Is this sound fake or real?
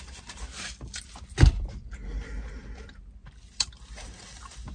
real